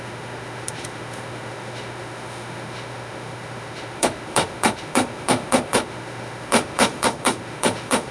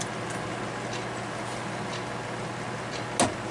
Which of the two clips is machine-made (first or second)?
first